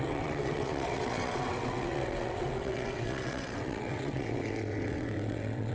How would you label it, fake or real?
fake